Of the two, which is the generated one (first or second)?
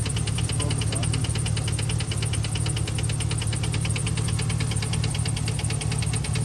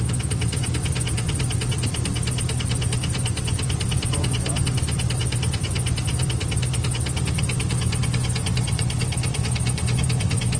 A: second